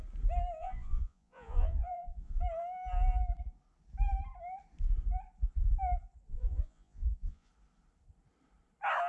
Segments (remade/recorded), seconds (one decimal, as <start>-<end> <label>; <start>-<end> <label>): 0.0-0.6 recorded; 0.6-2.3 remade; 2.3-6.3 recorded; 6.3-7.5 remade; 7.5-9.1 recorded